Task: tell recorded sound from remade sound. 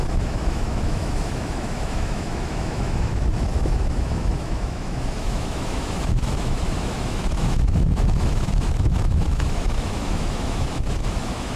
remade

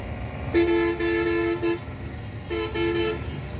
recorded